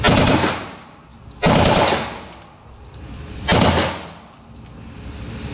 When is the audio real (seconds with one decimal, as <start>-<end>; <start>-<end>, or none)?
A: 0.0-5.5